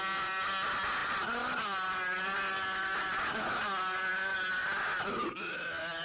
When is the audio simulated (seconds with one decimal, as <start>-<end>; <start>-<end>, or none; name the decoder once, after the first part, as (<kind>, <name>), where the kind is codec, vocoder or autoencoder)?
none